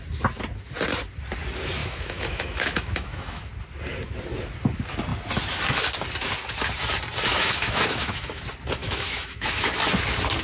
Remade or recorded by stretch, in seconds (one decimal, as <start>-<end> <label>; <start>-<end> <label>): 0.0-1.8 recorded; 1.8-3.5 remade; 3.5-7.3 recorded; 7.3-8.4 remade; 8.4-8.8 recorded; 8.8-9.7 remade; 9.7-10.4 recorded